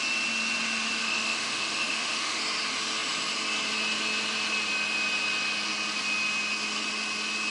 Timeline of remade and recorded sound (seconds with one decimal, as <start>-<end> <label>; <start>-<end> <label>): 0.0-1.0 recorded; 1.0-2.4 remade; 2.4-7.5 recorded